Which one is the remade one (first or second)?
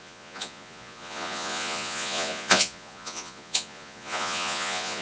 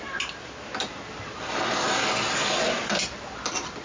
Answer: first